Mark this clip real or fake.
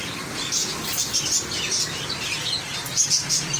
real